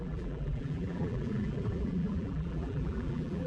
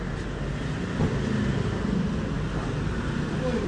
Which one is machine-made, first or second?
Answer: first